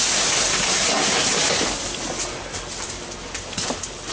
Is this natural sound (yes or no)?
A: yes